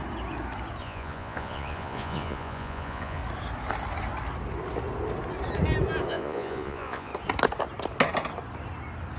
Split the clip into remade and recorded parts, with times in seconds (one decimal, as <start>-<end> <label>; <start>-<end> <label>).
0.0-0.8 recorded; 0.8-3.2 remade; 3.2-6.1 recorded; 6.1-7.1 remade; 7.1-9.2 recorded